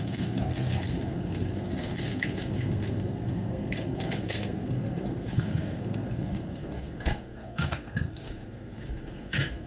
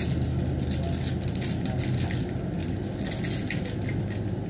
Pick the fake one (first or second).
first